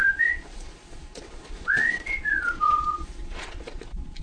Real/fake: fake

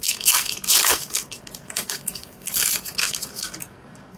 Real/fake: fake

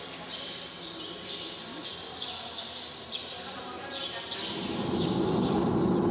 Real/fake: real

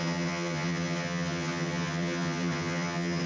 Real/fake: fake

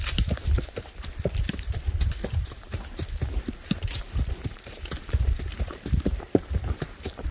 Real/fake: fake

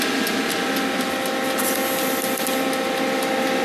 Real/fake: real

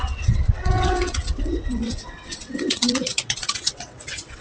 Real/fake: fake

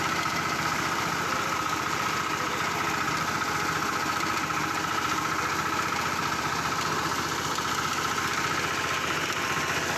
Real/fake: fake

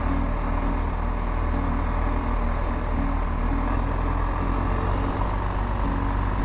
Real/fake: real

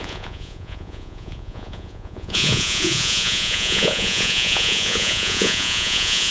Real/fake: fake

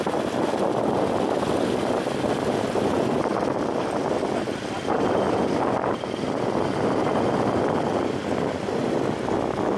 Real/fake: real